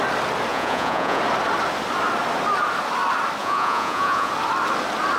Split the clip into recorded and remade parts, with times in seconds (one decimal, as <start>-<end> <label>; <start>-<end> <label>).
0.0-0.5 recorded; 0.5-1.2 remade; 1.2-3.4 recorded; 3.4-4.3 remade; 4.3-5.2 recorded